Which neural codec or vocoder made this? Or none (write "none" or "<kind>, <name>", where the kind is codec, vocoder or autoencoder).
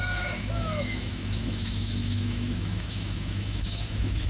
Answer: autoencoder, DAC-VAE